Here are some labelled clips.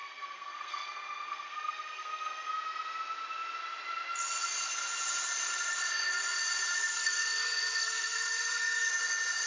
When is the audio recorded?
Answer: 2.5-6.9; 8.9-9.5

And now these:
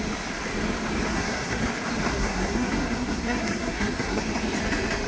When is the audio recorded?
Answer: 0.0-1.1; 1.6-2.1; 4.2-5.1

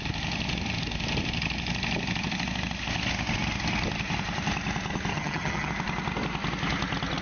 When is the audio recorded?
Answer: 0.0-5.1; 5.7-7.2

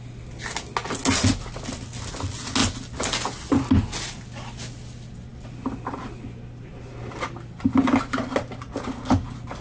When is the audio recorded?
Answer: 0.0-9.6

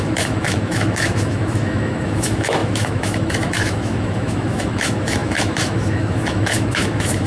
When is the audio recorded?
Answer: none

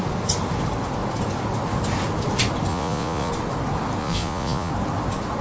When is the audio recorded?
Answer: 0.0-2.7; 3.3-4.0; 4.7-5.4